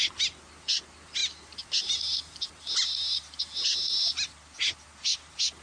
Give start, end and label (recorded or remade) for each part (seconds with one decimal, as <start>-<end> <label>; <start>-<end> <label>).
0.0-5.6 recorded

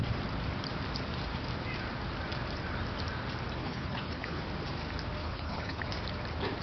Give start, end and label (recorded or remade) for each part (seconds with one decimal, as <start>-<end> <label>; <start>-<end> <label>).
0.0-3.6 recorded; 3.6-4.4 remade; 4.4-5.2 recorded; 5.2-5.8 remade; 5.8-6.6 recorded

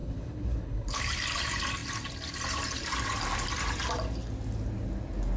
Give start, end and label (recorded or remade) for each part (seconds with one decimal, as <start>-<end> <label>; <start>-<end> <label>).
0.0-1.0 remade; 1.0-5.4 recorded

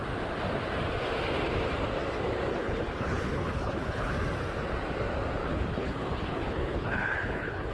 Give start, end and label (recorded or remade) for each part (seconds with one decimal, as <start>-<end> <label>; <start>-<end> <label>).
0.0-2.6 recorded; 2.6-4.1 remade; 4.1-5.4 recorded; 5.4-7.7 remade

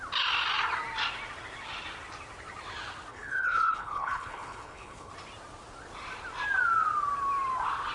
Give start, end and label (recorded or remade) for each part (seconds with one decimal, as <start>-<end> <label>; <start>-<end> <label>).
0.0-3.1 recorded; 3.1-5.1 remade; 5.1-7.9 recorded

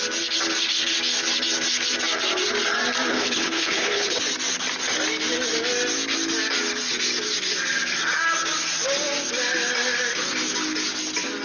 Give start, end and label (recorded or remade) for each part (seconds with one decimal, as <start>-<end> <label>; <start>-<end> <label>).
0.0-3.1 recorded; 3.1-4.2 remade; 4.2-11.4 recorded